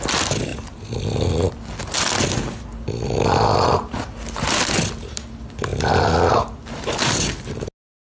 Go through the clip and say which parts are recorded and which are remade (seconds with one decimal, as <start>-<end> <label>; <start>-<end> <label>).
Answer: 0.0-8.0 recorded